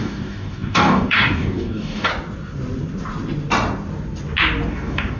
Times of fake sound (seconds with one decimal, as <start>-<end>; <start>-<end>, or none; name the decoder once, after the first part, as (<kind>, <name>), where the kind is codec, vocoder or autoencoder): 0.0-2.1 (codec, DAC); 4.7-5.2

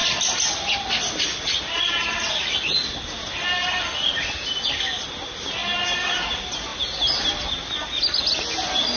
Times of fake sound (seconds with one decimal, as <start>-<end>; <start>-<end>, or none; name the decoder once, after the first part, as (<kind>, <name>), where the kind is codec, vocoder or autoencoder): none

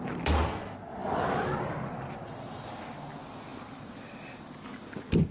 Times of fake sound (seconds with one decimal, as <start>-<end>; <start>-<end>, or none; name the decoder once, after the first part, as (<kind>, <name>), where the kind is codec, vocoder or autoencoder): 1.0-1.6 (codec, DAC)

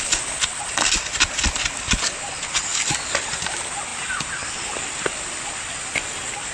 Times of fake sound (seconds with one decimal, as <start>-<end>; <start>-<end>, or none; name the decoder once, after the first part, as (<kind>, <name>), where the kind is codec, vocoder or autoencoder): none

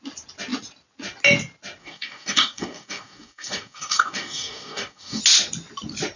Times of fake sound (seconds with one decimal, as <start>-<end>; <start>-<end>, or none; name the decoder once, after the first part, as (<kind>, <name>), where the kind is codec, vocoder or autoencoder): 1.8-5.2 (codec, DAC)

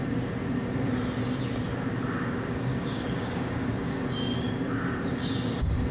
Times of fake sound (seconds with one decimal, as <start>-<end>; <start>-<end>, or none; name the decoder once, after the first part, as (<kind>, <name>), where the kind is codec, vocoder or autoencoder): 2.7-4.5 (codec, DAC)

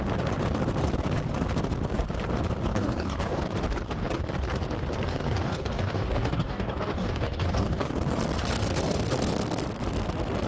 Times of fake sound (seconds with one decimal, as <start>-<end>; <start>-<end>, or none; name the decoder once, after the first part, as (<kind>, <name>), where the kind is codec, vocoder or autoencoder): 2.7-3.4 (codec, DAC); 5.1-7.9

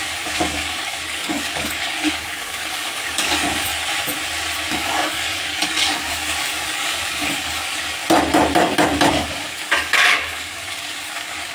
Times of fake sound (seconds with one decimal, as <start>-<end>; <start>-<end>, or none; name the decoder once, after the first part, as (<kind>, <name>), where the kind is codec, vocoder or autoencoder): 0.0-3.7 (codec, DAC); 4.7-8.0; 9.1-11.5